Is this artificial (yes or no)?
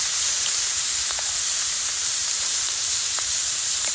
yes